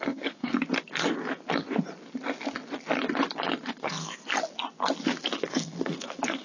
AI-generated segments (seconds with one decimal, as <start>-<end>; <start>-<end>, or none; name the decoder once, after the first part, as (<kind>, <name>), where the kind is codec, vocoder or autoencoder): 0.0-0.5 (codec, SNAC); 3.8-4.2; 5.4-6.4